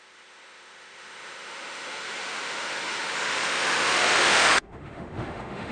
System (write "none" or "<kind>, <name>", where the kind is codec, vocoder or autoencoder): autoencoder, DAC-VAE